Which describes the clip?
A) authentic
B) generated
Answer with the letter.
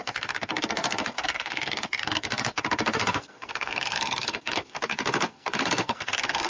B